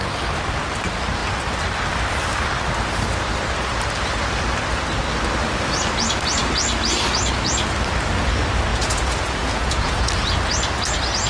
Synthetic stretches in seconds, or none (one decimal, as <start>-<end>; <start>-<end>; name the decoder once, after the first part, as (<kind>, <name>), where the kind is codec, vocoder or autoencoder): 8.7-10.1 (vocoder, Vocos)